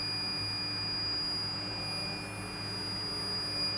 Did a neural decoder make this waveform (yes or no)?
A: no